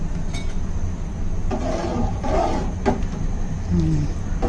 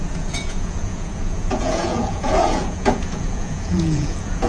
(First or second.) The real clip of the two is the first